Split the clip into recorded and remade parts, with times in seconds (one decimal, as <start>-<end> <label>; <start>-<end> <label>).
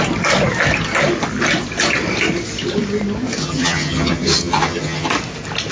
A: 0.0-3.4 recorded; 3.4-5.1 remade; 5.1-5.7 recorded